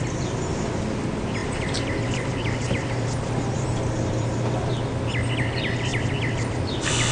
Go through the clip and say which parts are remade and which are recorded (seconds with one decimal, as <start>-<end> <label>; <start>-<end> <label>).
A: 0.0-1.4 recorded; 1.4-4.7 remade; 4.7-5.9 recorded; 5.9-6.5 remade; 6.5-7.1 recorded